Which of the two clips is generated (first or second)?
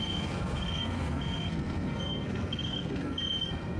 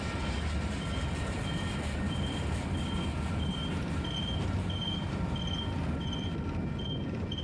first